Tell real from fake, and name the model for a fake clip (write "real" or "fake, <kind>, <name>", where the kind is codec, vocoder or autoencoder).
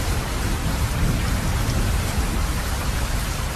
real